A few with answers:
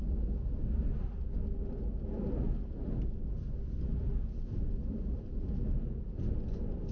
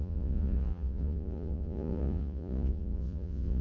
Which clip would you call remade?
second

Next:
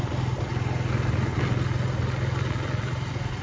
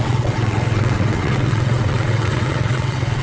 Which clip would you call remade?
second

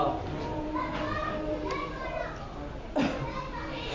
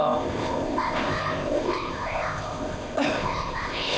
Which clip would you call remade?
second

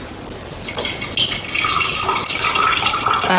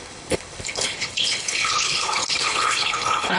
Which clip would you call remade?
second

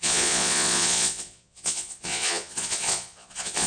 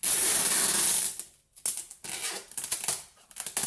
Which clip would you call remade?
first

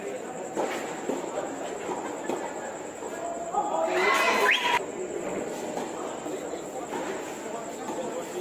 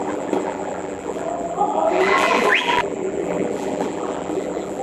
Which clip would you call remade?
second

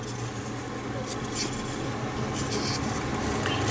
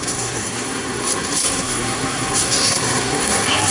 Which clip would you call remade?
second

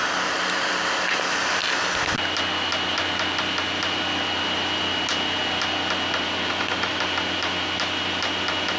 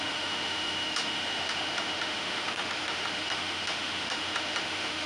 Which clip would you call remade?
second